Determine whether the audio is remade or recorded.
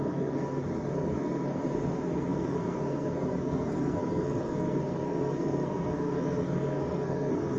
remade